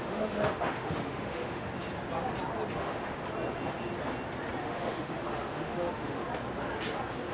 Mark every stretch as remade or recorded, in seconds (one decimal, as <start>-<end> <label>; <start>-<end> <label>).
0.0-1.7 remade; 1.7-2.7 recorded; 2.7-3.2 remade; 3.2-4.6 recorded; 4.6-6.2 remade; 6.2-7.3 recorded